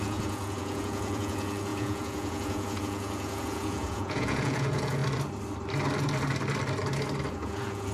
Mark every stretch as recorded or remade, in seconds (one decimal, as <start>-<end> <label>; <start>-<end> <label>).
0.0-5.0 remade; 5.0-7.3 recorded; 7.3-7.9 remade